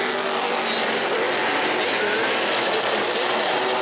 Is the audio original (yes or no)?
yes